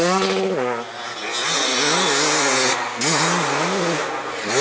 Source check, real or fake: real